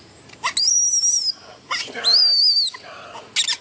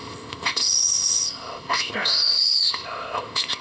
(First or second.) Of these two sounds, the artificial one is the second